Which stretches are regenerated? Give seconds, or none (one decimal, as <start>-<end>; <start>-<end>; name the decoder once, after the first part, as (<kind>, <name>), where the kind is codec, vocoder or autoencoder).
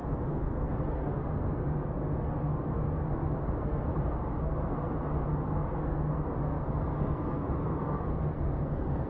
0.0-9.1 (codec, SNAC)